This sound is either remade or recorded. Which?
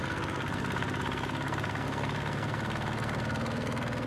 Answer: remade